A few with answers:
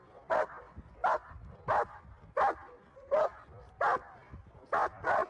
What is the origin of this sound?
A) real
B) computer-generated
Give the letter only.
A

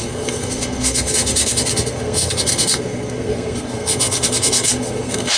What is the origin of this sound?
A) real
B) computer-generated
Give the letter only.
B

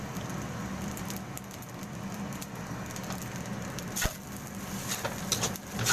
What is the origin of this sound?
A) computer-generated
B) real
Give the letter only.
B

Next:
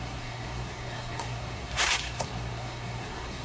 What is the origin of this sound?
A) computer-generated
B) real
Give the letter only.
A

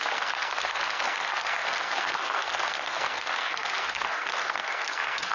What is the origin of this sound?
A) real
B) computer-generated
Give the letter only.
B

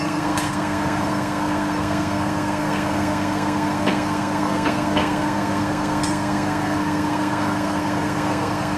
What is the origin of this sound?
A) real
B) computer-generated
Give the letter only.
B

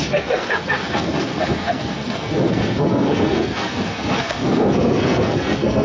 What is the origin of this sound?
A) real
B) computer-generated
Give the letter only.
B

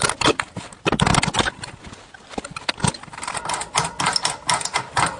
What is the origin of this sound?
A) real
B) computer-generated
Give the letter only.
A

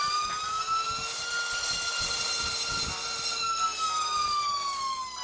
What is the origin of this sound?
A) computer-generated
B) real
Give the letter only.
B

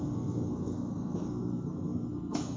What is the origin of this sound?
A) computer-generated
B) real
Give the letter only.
A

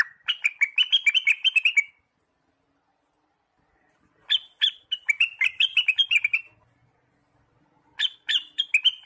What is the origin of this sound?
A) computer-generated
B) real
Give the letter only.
B